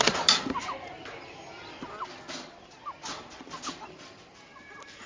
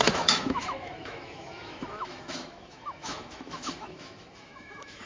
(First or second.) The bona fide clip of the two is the first